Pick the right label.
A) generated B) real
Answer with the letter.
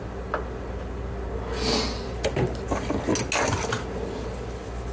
B